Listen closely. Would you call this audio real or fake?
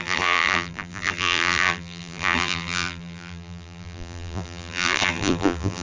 fake